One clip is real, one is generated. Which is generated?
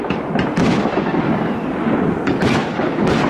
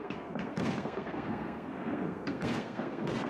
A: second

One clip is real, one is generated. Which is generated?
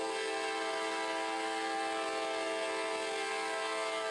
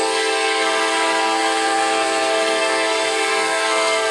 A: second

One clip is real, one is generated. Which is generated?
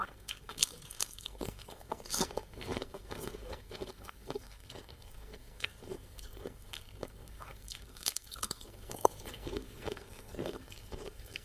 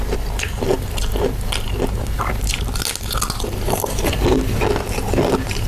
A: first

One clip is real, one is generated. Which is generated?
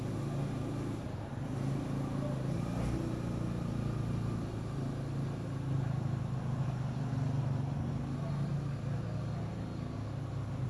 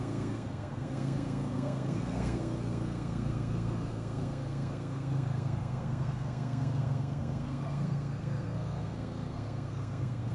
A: second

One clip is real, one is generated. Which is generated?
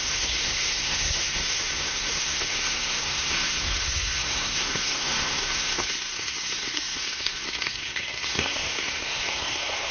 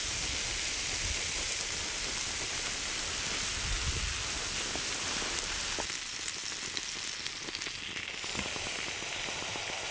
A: first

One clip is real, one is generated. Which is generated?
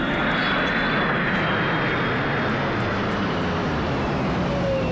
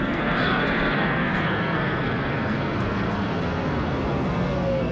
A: second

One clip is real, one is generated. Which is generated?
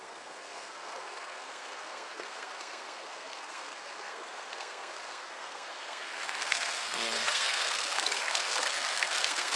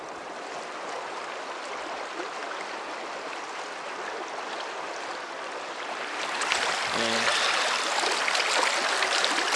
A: first